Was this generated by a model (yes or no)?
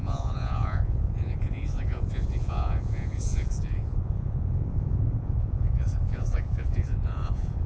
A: yes